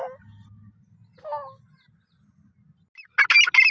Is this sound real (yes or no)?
yes